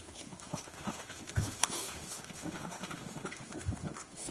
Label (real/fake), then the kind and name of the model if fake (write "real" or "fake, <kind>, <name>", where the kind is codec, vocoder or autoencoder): fake, autoencoder, DAC-VAE